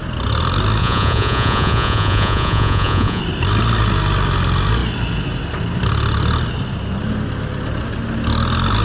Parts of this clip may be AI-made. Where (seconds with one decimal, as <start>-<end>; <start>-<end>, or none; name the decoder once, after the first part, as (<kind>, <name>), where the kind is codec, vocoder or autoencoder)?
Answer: 0.8-3.2 (vocoder, Vocos)